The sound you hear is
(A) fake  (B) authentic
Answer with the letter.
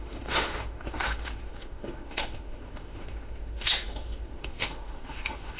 A